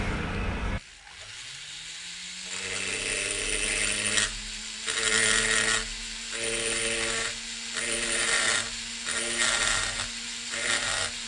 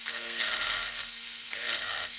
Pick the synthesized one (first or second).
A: second